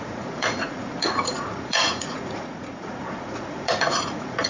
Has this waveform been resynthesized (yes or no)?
yes